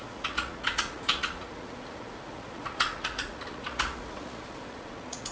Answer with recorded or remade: remade